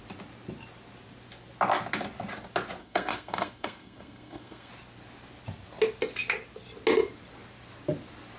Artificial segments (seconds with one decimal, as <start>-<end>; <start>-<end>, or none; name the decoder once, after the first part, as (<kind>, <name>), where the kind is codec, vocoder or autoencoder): 2.8-4.7 (codec, SNAC)